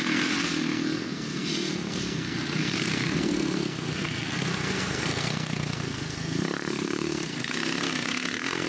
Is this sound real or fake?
fake